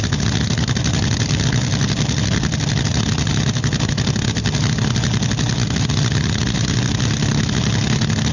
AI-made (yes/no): no